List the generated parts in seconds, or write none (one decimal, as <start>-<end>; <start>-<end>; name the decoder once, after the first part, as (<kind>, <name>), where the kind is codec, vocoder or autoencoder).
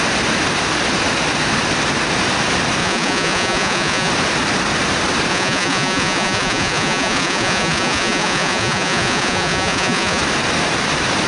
2.8-4.1 (vocoder, Vocos); 5.3-10.2